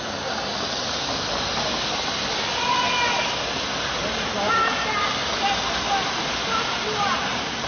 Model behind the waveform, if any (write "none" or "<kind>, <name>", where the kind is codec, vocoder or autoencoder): none